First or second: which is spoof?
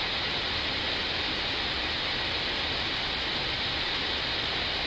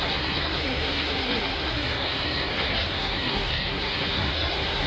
second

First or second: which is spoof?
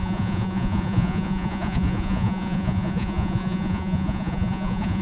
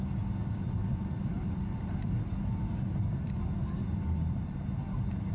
first